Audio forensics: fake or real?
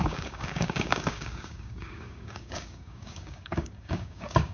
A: fake